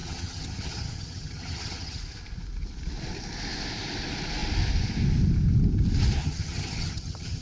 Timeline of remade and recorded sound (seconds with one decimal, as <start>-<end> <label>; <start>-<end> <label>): 0.0-2.0 remade; 2.0-6.2 recorded; 6.2-7.4 remade